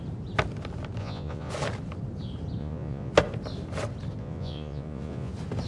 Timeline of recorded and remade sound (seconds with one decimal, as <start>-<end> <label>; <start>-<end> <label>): 0.0-1.0 recorded; 1.0-1.5 remade; 1.5-2.6 recorded; 2.6-3.1 remade; 3.1-4.2 recorded; 4.2-5.3 remade; 5.3-5.7 recorded